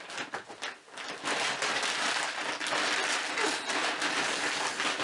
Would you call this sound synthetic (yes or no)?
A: no